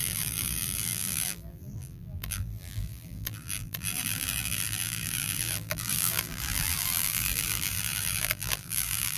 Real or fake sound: fake